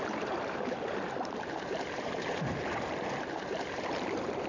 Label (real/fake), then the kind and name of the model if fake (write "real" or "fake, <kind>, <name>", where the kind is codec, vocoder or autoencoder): fake, vocoder, BigVGAN v2